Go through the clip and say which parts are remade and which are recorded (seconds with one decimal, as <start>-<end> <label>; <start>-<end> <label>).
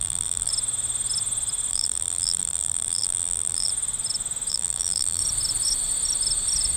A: 0.0-0.5 remade; 0.5-1.7 recorded; 1.7-3.7 remade; 3.7-4.5 recorded; 4.5-5.2 remade; 5.2-6.8 recorded